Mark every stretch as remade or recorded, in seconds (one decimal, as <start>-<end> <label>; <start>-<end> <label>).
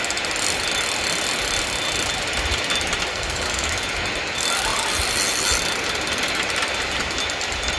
0.0-3.1 recorded; 3.1-3.7 remade; 3.7-7.8 recorded